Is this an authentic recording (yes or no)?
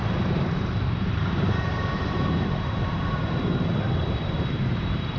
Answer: no